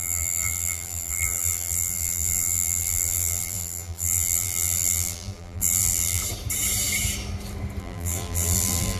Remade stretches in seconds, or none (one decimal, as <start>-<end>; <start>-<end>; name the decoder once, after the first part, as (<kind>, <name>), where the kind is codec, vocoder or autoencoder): 0.0-6.2 (vocoder, BigVGAN v2); 7.8-9.0